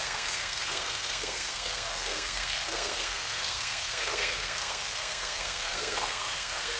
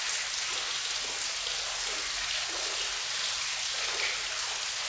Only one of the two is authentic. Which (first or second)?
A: second